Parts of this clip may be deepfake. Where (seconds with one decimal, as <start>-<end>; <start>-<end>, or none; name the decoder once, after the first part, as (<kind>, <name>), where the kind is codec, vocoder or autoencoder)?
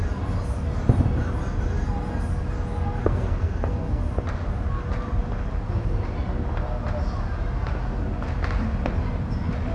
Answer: 3.0-4.0 (codec, SNAC)